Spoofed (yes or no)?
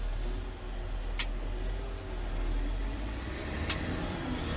no